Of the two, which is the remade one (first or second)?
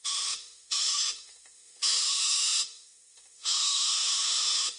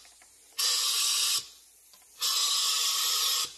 first